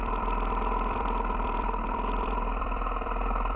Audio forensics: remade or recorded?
remade